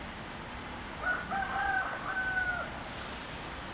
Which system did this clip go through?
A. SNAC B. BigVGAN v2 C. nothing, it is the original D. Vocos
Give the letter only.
C